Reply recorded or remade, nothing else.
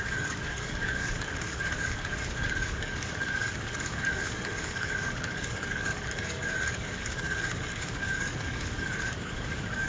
remade